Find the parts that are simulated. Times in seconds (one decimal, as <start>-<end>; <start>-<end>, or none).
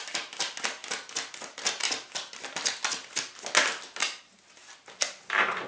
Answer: none